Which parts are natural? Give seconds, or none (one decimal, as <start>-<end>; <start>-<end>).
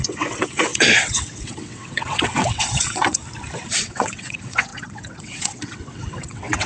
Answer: 3.2-3.8